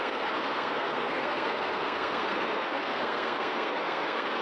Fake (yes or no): yes